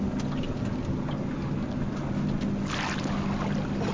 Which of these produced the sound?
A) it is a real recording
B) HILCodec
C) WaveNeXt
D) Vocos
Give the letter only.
A